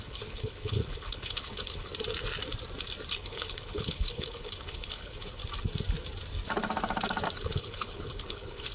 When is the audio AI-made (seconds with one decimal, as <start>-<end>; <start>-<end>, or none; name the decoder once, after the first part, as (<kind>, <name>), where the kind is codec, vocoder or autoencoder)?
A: 0.0-1.9 (codec, HILCodec); 3.1-5.4; 7.4-8.7